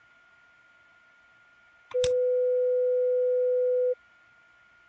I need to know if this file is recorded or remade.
recorded